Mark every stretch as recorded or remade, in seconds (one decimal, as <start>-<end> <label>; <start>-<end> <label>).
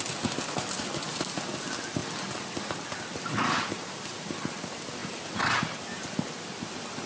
0.0-7.1 recorded